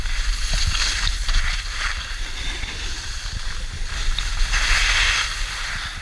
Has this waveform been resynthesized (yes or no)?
no